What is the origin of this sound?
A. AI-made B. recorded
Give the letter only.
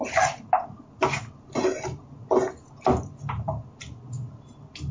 B